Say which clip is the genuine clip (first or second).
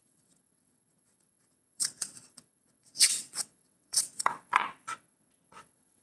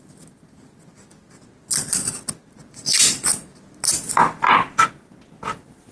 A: second